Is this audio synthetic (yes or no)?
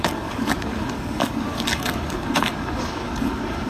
yes